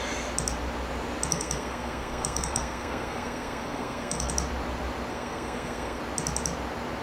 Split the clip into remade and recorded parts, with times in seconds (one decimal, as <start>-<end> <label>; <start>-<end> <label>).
0.0-1.3 recorded; 1.3-4.3 remade; 4.3-5.1 recorded; 5.1-6.0 remade; 6.0-7.0 recorded